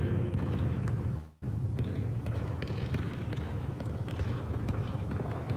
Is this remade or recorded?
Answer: remade